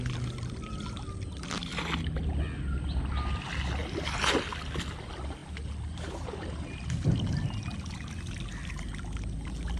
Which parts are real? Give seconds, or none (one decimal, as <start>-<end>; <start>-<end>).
0.0-9.8